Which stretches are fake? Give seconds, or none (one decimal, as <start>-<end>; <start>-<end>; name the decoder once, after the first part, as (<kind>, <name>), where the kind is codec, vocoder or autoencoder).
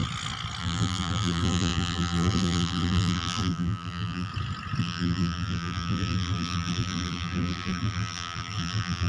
0.6-4.3 (vocoder, BigVGAN v2); 4.8-9.1